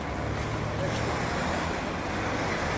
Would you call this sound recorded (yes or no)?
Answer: yes